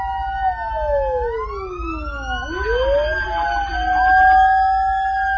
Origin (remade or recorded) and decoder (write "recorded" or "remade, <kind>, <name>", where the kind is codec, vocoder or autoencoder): recorded